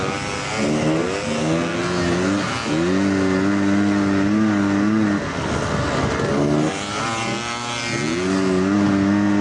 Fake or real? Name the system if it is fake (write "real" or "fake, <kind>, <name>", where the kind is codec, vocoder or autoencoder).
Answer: real